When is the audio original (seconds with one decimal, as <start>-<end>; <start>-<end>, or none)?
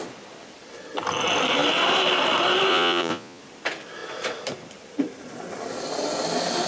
0.0-2.7; 3.4-6.7